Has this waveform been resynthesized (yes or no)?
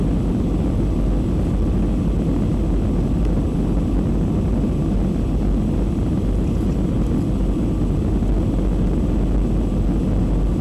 no